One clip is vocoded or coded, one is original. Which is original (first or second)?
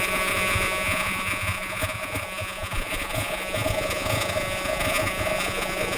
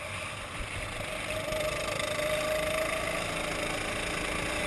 second